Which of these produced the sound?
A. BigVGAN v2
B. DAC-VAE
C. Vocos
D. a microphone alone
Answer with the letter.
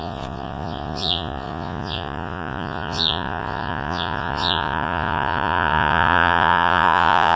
C